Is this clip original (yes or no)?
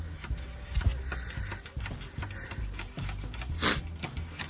yes